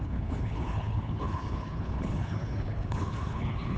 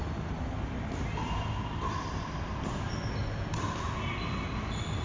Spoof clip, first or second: first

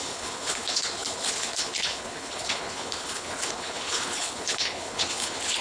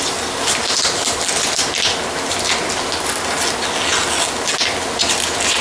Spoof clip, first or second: first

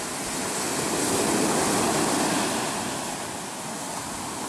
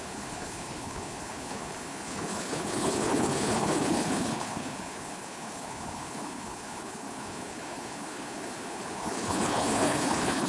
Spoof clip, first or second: second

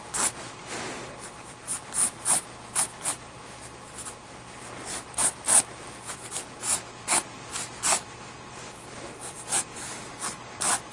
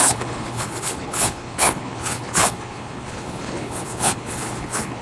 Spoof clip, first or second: second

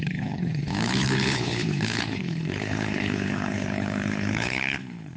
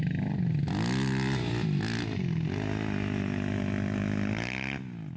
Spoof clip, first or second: first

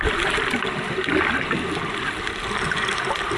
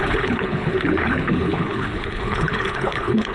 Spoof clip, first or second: second